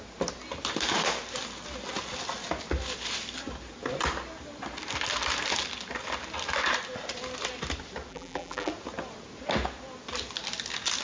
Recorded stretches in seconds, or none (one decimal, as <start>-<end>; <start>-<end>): 0.0-8.1; 8.7-11.0